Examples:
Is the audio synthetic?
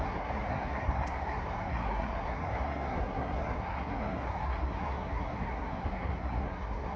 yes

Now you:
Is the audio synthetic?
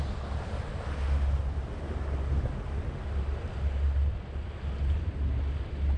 no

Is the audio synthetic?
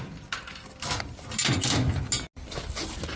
no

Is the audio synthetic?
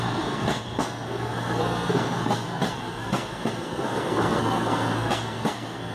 yes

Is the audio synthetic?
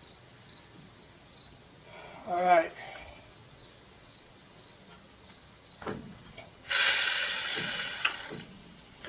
yes